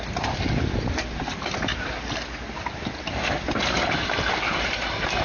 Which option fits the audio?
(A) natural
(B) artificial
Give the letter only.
A